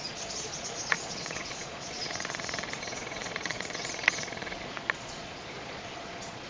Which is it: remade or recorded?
remade